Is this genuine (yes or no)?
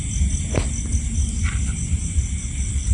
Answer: yes